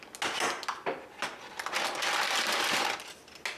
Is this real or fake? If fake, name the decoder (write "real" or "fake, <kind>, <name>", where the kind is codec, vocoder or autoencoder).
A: real